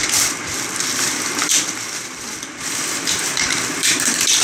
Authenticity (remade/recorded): remade